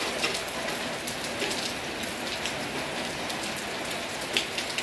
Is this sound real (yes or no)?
yes